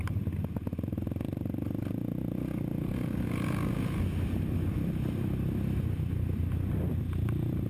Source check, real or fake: real